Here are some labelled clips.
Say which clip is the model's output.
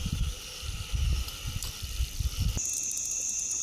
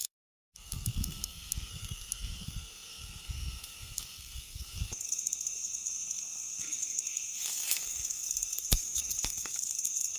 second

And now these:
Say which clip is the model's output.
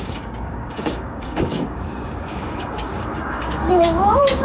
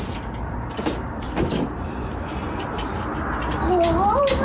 first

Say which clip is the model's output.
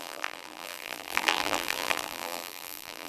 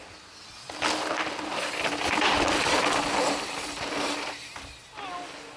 first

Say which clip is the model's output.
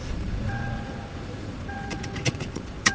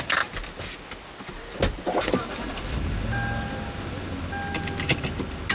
first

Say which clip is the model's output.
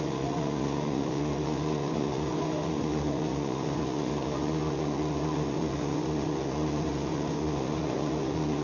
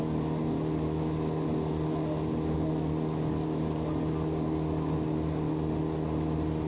first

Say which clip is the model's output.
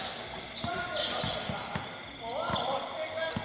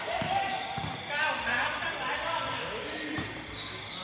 second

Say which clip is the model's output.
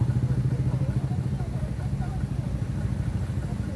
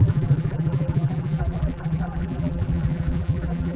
second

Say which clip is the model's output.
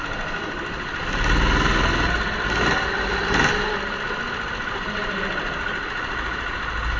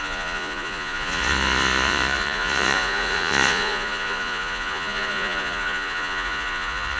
second